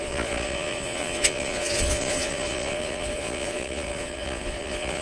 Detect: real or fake fake